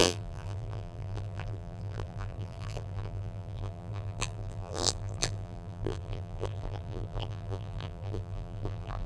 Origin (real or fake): fake